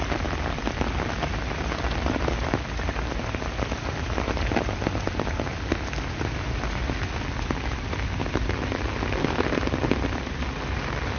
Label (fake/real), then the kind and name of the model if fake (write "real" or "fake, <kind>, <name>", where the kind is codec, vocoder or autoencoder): real